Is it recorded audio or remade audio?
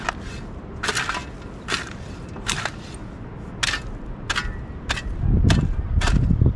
recorded